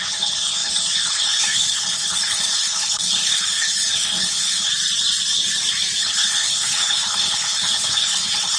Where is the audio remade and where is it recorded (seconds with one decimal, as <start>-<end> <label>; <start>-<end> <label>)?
0.0-4.7 remade; 4.7-6.0 recorded; 6.0-8.6 remade